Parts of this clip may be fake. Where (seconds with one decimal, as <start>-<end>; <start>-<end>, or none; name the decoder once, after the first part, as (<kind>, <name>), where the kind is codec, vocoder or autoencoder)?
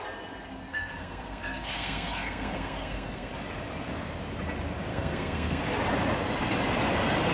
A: 0.7-3.3 (codec, SNAC); 4.9-5.6